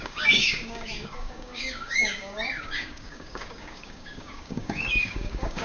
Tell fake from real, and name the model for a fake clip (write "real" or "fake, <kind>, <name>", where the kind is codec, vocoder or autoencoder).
fake, codec, DAC